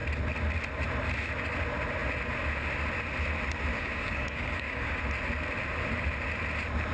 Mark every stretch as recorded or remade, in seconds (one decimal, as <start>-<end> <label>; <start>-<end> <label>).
0.0-3.7 recorded; 3.7-5.0 remade; 5.0-6.9 recorded